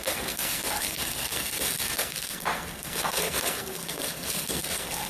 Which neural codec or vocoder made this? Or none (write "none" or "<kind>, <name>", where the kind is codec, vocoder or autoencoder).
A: codec, SNAC